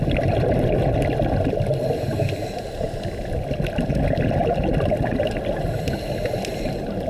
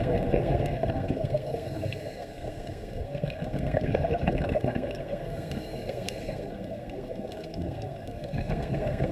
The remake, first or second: second